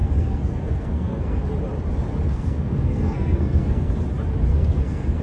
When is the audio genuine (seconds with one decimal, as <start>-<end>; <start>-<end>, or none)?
1.4-2.3; 3.9-4.5